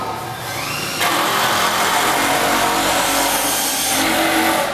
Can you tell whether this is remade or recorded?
recorded